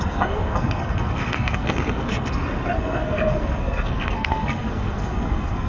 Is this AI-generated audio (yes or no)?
yes